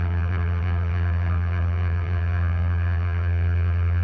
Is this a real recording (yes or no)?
no